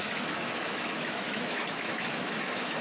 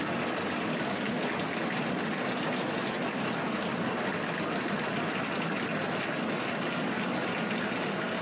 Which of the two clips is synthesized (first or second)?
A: first